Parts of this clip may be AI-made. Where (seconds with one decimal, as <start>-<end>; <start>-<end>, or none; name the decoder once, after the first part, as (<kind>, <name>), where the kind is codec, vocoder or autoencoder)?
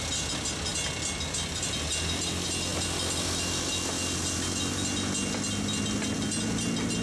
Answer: none